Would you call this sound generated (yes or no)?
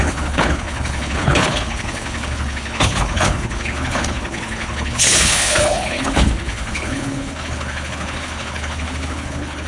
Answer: yes